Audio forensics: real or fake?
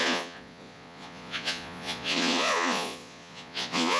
fake